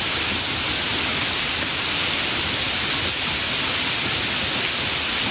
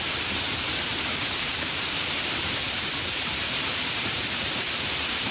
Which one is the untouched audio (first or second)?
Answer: first